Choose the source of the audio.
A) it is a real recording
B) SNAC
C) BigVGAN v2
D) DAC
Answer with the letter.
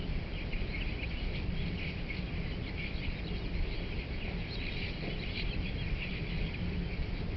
A